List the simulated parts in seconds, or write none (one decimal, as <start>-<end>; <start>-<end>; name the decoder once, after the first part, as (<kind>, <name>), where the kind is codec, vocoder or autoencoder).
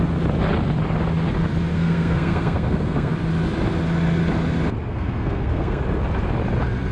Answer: 1.7-3.1 (codec, SNAC); 4.9-5.8